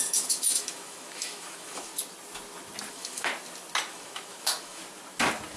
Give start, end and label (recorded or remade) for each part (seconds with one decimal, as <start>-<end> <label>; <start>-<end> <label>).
0.0-1.9 remade; 1.9-2.9 recorded; 2.9-3.3 remade; 3.3-3.9 recorded; 3.9-4.8 remade; 4.8-5.6 recorded